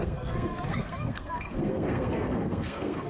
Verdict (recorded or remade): remade